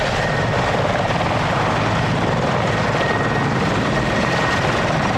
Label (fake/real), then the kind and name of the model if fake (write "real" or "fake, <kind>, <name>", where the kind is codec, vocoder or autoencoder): real